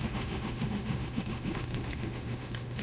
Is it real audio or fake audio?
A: fake